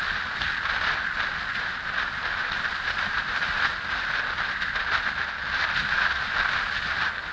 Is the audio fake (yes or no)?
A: no